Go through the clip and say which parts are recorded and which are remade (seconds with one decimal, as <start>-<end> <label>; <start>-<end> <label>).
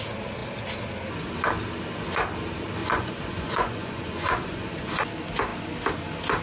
0.0-2.8 recorded; 2.8-4.9 remade; 4.9-6.4 recorded